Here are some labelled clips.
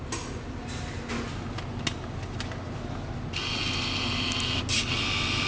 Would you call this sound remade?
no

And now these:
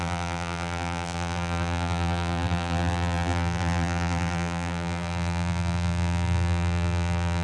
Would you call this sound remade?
yes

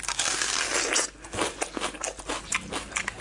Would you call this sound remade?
no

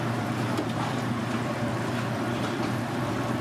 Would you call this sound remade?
yes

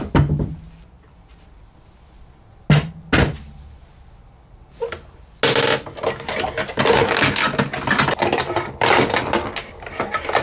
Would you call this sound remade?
no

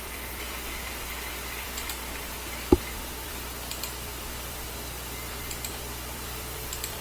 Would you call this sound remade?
yes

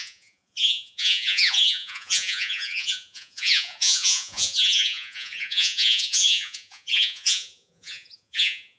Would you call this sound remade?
yes